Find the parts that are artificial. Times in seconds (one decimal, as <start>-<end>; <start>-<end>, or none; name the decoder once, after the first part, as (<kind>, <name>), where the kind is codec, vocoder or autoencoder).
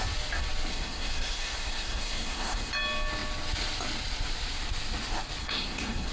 0.7-2.7 (codec, SNAC); 5.4-6.1